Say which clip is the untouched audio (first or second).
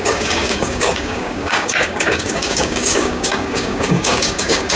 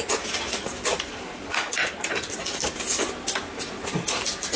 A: second